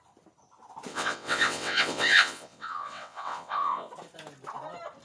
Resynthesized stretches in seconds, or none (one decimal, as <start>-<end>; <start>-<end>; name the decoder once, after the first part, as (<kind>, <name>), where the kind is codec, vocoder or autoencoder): 0.9-3.9 (vocoder, WaveNeXt)